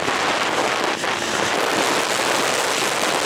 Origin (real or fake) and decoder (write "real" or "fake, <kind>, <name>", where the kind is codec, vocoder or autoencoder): real